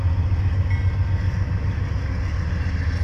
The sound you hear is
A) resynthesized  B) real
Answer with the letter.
B